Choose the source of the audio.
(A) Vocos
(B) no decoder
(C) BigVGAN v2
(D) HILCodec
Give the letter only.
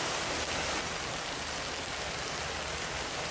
B